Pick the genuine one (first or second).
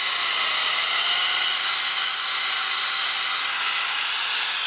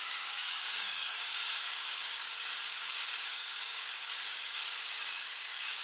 first